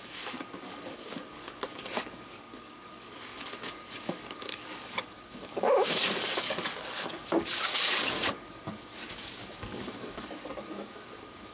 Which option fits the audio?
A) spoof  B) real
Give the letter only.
A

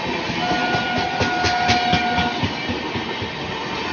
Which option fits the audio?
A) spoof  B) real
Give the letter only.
B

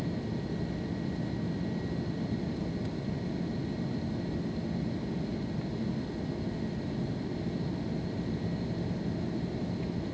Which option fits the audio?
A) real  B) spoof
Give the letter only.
A